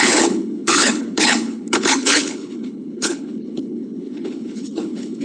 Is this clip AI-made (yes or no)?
yes